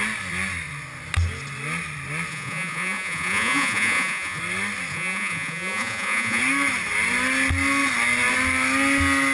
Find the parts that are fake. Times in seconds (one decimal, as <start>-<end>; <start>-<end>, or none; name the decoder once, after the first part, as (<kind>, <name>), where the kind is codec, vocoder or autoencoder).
2.3-4.4 (vocoder, Vocos); 4.9-6.4